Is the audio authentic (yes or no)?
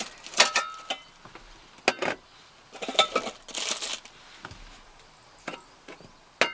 yes